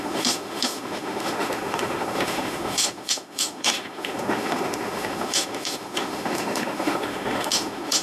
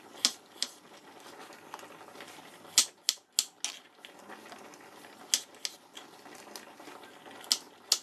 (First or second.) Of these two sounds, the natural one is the second